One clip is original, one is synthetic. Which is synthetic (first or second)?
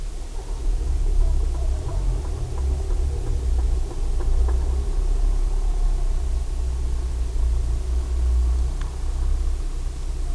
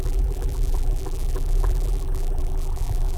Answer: second